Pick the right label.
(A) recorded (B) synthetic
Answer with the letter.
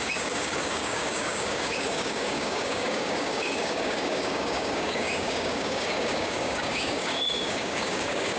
B